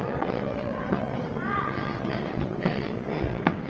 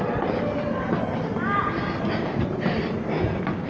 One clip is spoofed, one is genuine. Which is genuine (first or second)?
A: second